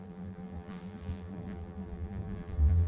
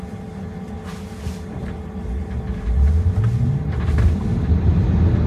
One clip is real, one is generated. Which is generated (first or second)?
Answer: first